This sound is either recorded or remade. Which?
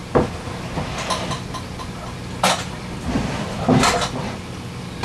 recorded